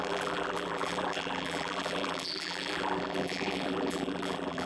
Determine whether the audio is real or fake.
fake